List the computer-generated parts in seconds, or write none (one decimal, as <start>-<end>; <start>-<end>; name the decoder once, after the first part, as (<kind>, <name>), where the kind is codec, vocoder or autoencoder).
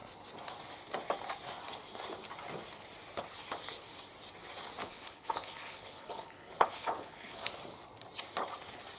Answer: 4.8-7.4 (codec, HILCodec)